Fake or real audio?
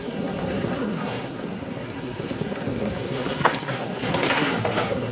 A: fake